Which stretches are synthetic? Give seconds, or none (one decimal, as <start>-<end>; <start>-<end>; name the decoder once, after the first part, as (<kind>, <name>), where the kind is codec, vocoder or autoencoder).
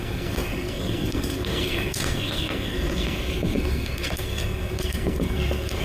0.0-5.8 (codec, SNAC)